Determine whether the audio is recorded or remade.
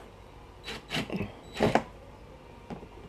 recorded